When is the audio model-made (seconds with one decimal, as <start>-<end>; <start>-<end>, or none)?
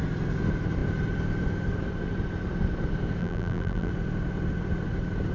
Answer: 3.2-3.9